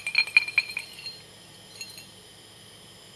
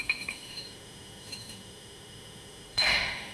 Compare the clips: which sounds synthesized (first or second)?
second